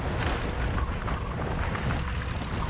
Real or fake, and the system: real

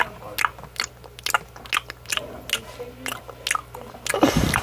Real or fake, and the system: real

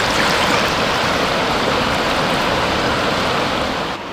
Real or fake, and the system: real